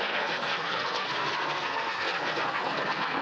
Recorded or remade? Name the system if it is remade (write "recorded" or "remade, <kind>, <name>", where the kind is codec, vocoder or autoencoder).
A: remade, codec, SNAC